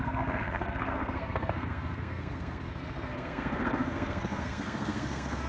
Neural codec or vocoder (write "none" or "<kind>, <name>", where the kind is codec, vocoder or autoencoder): codec, SNAC